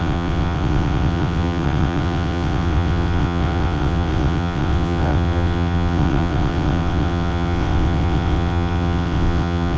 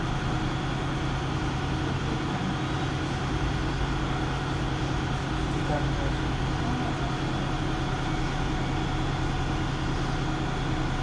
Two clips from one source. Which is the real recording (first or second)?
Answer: second